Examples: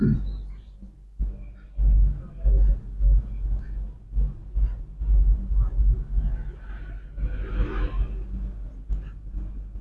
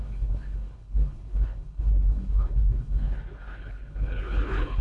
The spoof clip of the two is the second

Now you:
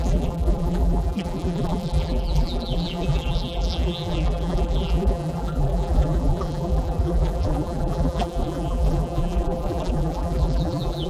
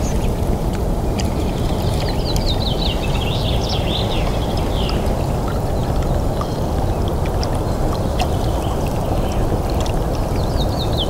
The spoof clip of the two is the first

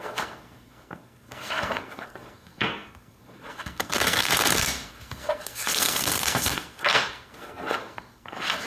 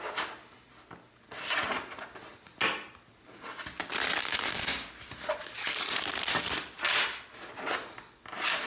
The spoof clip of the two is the first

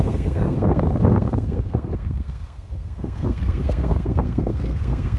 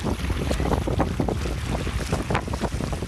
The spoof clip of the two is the first